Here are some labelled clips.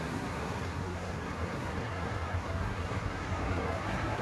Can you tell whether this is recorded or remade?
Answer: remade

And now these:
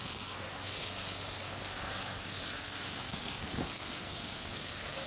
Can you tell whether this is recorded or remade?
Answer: remade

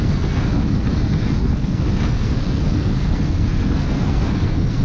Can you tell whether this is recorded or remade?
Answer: remade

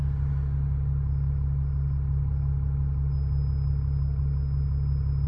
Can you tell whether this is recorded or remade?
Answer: recorded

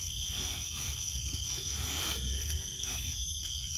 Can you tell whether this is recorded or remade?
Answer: remade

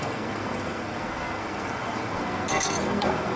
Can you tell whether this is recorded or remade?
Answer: remade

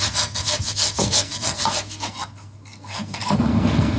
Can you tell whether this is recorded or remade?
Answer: remade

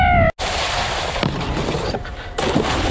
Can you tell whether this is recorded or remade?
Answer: recorded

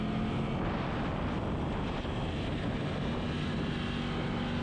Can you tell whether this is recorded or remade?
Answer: recorded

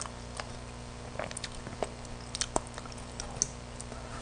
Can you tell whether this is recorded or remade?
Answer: recorded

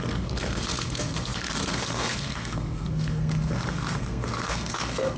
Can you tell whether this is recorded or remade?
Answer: remade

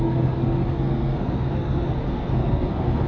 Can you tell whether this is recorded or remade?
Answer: remade